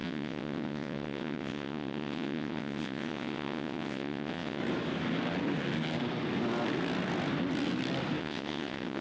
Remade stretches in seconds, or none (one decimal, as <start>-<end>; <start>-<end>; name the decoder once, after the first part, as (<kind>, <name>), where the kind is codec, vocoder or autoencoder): 0.0-4.6 (vocoder, WaveNeXt); 8.2-9.0